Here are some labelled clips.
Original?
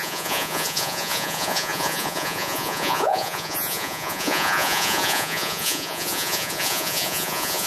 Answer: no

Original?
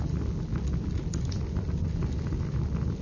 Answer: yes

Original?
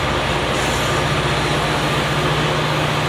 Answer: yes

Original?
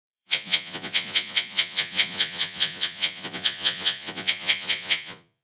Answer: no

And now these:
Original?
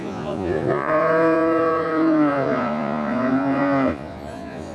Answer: no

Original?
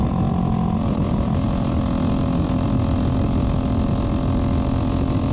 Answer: yes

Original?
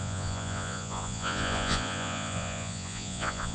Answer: no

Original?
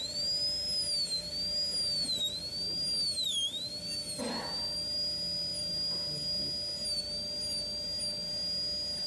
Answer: yes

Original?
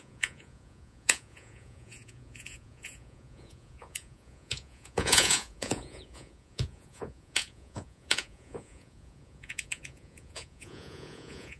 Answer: no